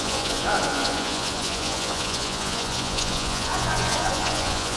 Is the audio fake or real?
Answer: fake